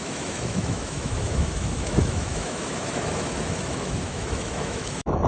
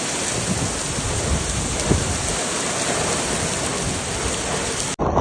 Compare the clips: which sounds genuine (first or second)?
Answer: second